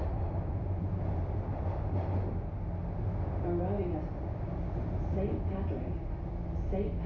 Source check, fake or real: real